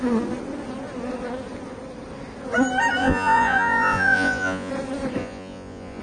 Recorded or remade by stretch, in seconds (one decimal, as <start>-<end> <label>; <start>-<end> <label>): 0.0-3.0 recorded; 3.0-4.7 remade; 4.7-5.2 recorded; 5.2-6.0 remade